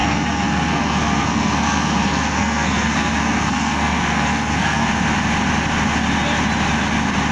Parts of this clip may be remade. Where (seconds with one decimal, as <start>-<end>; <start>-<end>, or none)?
0.0-4.9